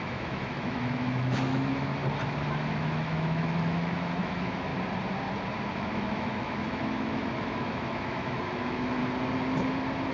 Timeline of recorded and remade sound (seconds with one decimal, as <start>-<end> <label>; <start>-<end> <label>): 0.0-1.9 remade; 1.9-2.7 recorded; 2.7-4.7 remade; 4.7-5.7 recorded; 5.7-9.0 remade; 9.0-10.1 recorded